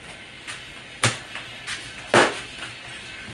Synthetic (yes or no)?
no